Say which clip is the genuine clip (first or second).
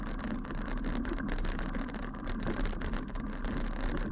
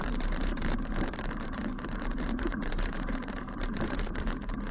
first